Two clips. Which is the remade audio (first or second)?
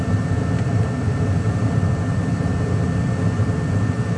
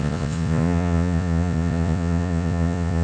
second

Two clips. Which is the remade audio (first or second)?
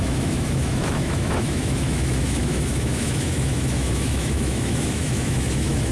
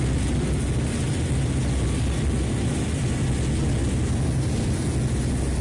first